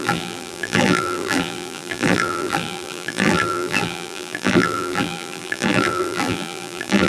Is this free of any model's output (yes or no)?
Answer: no